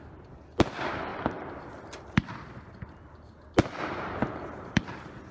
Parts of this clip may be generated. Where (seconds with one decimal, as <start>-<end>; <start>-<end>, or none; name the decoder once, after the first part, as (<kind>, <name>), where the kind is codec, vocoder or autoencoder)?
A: none